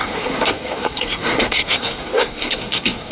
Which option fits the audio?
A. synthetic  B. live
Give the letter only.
A